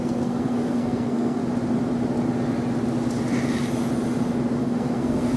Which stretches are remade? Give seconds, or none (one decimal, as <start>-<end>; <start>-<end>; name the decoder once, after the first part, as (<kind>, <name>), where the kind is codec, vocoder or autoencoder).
0.0-1.4 (codec, SNAC); 4.6-5.4